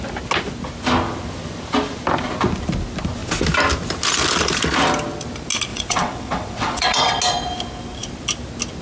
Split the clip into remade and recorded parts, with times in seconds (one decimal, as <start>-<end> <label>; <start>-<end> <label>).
0.0-5.7 recorded; 5.7-7.2 remade; 7.2-8.8 recorded